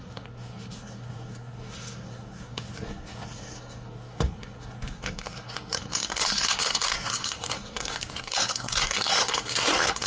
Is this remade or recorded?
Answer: remade